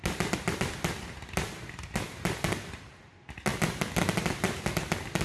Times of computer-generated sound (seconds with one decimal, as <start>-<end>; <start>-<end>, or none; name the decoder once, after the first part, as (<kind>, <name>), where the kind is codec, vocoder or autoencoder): none